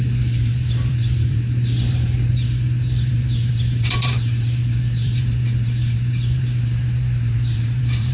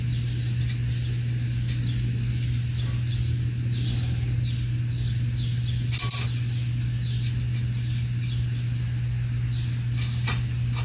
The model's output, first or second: first